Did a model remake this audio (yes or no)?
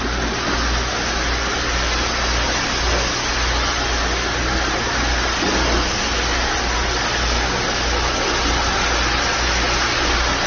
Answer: no